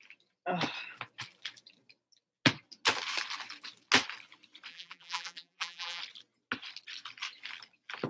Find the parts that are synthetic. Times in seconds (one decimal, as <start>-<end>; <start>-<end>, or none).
4.7-6.0